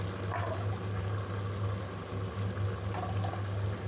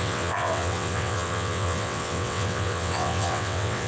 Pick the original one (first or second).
first